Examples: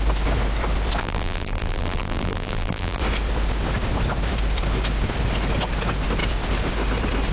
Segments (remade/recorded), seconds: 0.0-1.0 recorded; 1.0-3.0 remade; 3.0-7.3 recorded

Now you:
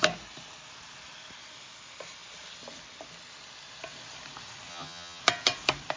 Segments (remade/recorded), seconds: 0.0-4.7 recorded; 4.7-5.2 remade; 5.2-6.0 recorded

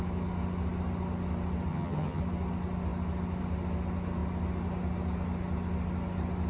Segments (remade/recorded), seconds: 0.0-1.7 recorded; 1.7-2.2 remade; 2.2-6.5 recorded

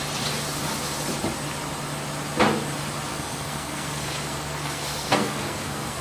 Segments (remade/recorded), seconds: 0.0-3.1 recorded; 3.1-6.0 remade

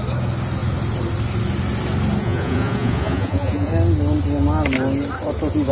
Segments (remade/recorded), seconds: 0.0-2.2 recorded; 2.2-3.7 remade; 3.7-5.7 recorded

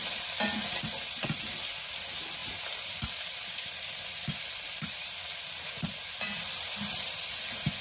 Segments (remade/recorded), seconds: 0.0-2.4 recorded; 2.4-7.1 remade; 7.1-7.8 recorded

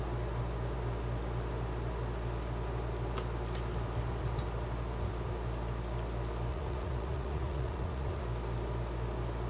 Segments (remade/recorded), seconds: 0.0-6.5 recorded; 6.5-8.2 remade; 8.2-9.5 recorded

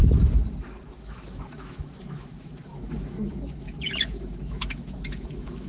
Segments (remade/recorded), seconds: 0.0-0.9 recorded; 0.9-5.7 remade